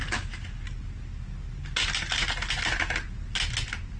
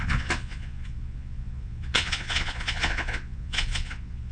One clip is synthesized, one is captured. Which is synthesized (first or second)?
second